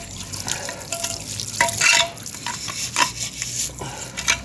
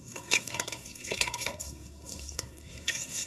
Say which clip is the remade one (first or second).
second